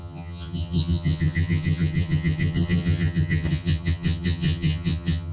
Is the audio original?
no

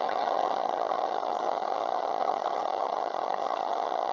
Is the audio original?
no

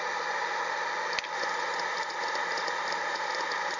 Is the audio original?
yes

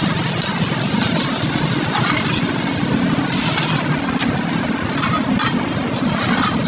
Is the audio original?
yes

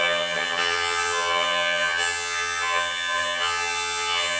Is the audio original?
no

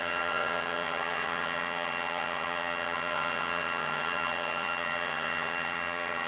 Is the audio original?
no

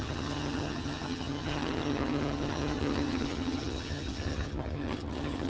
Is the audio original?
no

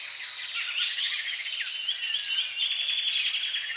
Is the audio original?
yes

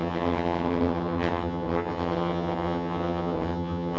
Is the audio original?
no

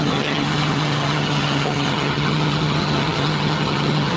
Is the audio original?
no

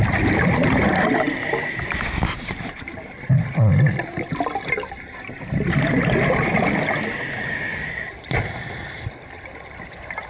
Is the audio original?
yes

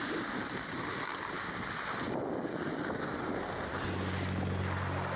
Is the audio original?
yes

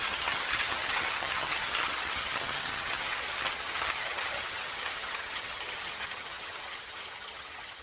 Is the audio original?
no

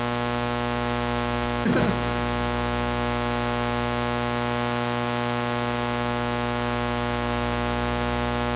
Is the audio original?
yes